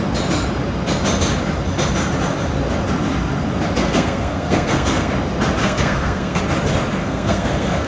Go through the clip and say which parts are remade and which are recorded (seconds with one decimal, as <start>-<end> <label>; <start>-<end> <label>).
0.0-3.8 recorded; 3.8-5.1 remade; 5.1-5.6 recorded; 5.6-6.4 remade; 6.4-7.0 recorded; 7.0-7.9 remade